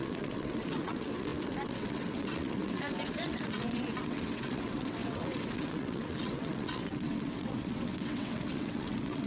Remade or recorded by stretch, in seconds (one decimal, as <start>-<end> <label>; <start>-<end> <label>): 0.0-9.3 remade